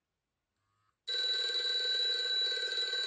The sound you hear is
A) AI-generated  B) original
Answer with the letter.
B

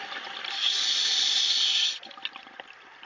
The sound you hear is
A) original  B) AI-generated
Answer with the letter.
A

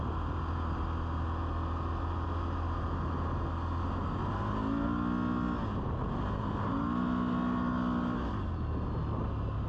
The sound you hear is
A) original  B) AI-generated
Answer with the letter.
A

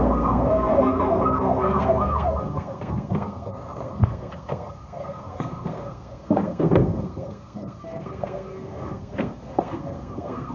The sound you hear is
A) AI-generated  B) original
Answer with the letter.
A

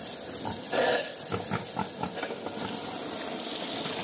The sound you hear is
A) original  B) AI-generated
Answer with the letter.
A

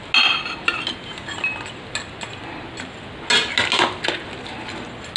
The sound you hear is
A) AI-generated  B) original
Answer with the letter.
B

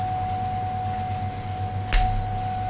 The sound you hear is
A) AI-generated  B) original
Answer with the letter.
B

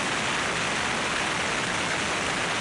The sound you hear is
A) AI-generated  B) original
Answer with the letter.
B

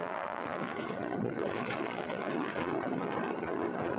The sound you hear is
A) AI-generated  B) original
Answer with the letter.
A